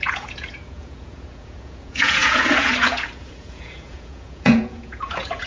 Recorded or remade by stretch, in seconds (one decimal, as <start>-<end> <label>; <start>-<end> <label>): 0.0-5.5 remade